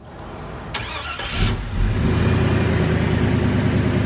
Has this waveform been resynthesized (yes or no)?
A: no